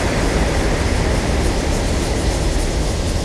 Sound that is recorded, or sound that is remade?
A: recorded